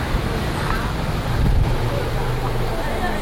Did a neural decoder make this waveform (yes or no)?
no